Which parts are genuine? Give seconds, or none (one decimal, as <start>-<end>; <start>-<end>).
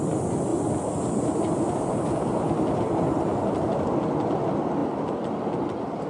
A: 0.0-6.1